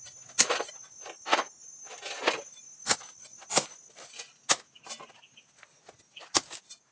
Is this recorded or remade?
recorded